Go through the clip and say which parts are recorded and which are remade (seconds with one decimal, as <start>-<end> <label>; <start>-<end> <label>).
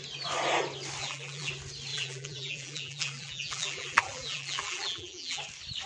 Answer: 0.0-1.0 recorded; 1.0-1.5 remade; 1.5-1.9 recorded; 1.9-5.4 remade; 5.4-5.9 recorded